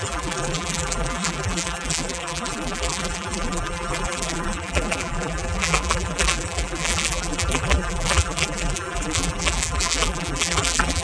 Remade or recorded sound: remade